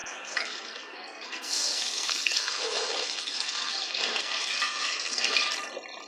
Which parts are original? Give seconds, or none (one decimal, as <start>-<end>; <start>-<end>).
5.4-6.1